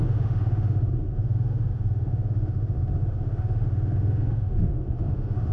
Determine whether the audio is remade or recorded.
remade